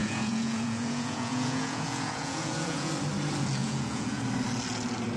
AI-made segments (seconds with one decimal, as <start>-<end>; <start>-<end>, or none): 0.0-2.9; 3.6-4.2